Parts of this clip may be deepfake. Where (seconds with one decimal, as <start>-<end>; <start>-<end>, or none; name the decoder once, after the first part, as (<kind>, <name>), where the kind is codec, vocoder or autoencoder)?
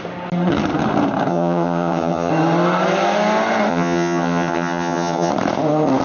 1.3-2.3 (vocoder, HiFi-GAN); 3.7-5.3